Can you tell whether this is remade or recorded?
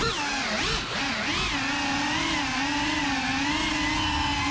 recorded